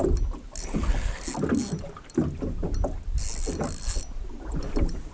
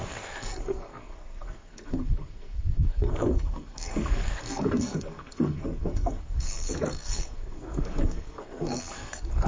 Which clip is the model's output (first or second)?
second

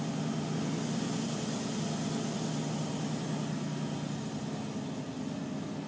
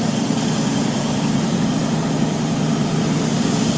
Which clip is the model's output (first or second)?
second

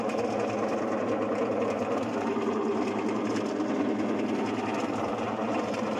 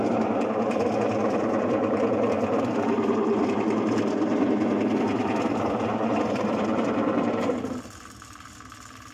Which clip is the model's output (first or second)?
second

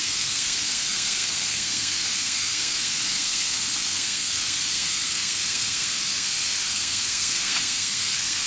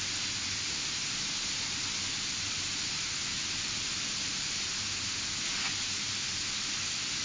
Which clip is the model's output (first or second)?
first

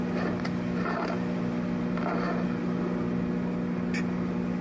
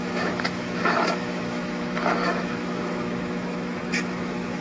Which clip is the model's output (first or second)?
second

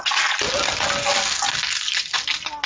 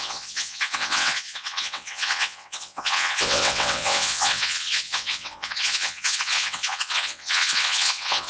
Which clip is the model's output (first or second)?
second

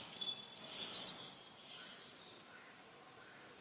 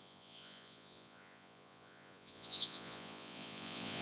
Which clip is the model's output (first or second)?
second